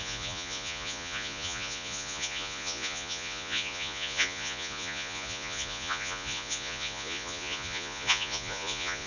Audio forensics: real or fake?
fake